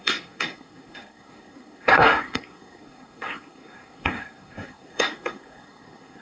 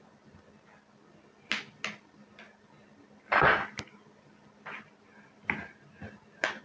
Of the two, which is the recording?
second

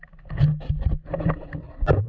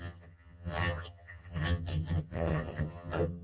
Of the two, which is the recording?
first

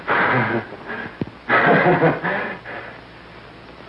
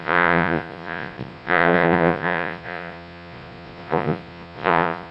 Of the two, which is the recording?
first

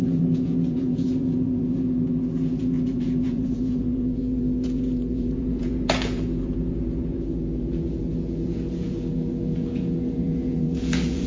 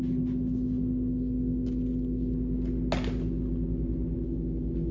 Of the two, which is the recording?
second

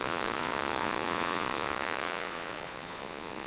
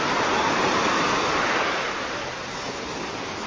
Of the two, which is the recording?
second